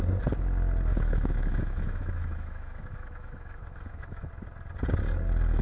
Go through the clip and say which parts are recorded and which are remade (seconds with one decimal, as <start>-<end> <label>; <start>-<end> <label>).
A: 0.0-0.9 recorded; 0.9-4.3 remade; 4.3-5.6 recorded